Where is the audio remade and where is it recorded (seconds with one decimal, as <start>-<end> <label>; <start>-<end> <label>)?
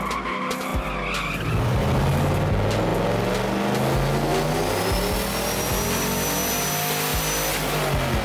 0.0-8.2 recorded